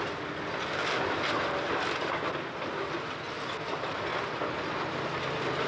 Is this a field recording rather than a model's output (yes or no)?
yes